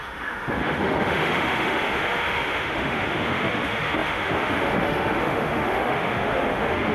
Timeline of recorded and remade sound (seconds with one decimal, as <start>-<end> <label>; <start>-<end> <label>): 0.0-6.9 remade